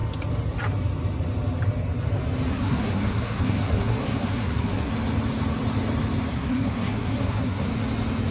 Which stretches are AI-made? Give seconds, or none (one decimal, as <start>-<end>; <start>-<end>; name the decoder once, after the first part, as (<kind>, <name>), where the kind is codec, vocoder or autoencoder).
2.5-4.9 (codec, SNAC); 6.3-7.7